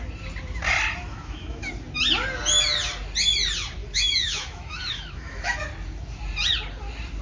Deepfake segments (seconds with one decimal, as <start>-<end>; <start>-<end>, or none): 1.1-1.7; 3.8-5.6